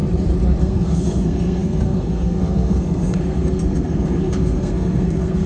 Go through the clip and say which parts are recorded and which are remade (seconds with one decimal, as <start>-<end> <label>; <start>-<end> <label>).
0.0-0.6 recorded; 0.6-5.5 remade